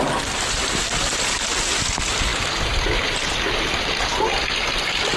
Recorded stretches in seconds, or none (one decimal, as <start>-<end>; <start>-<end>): 0.0-5.2

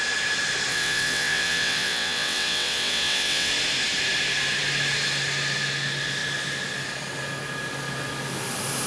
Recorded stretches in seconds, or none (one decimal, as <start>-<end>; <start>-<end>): 0.0-0.7; 3.5-8.9